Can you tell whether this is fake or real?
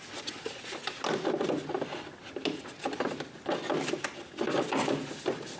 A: real